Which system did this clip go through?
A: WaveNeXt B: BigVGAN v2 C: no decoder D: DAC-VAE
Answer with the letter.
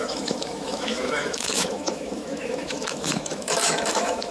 D